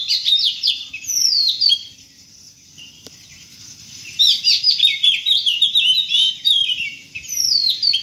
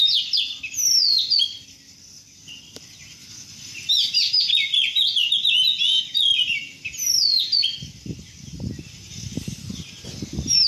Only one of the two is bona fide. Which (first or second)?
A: second